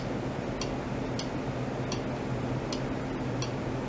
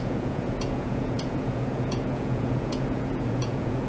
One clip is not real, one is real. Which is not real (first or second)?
second